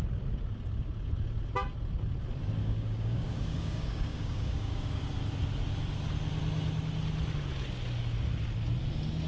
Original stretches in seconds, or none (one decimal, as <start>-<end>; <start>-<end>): 0.0-2.6; 5.0-9.3

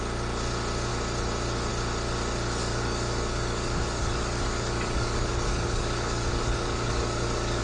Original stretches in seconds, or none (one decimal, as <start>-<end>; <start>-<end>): 0.0-2.6